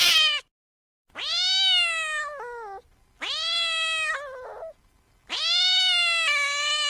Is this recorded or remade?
recorded